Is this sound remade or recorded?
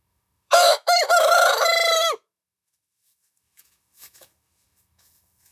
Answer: remade